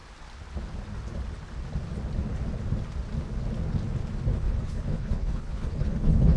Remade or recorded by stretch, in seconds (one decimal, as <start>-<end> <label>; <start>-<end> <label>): 0.0-4.3 recorded; 4.3-6.4 remade